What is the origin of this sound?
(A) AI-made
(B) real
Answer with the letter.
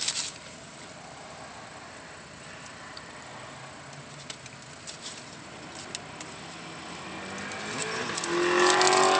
B